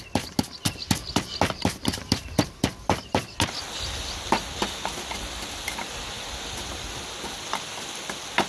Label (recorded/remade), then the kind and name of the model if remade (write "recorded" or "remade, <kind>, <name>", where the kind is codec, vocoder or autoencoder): recorded